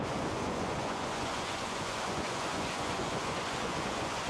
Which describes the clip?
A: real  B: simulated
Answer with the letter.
B